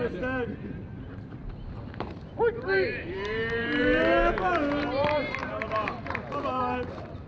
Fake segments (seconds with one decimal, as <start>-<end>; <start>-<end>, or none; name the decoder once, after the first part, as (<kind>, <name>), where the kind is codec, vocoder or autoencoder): 0.0-1.4 (vocoder, BigVGAN v2); 1.9-7.3